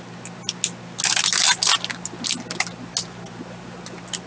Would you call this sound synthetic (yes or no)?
no